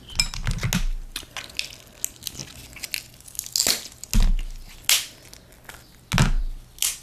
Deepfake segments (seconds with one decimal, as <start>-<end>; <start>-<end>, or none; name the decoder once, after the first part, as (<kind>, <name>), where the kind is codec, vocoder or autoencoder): none